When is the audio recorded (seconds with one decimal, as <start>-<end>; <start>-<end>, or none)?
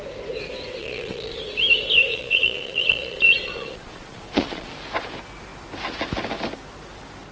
0.0-0.8; 1.4-2.1; 4.7-7.3